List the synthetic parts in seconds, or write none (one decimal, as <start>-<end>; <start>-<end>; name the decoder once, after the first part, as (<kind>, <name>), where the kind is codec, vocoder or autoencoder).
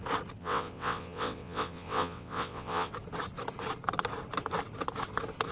0.4-2.9 (vocoder, WaveNeXt)